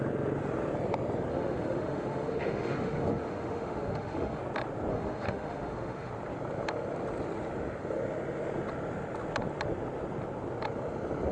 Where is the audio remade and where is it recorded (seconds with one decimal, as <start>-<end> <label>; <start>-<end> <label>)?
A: 0.0-1.3 recorded; 1.3-4.4 remade; 4.4-4.9 recorded; 4.9-6.1 remade; 6.1-11.3 recorded